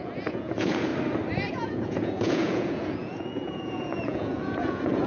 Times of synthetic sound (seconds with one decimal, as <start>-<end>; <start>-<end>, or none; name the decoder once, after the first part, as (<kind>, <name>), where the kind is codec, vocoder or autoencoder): 0.0-0.9 (vocoder, Vocos); 1.5-5.1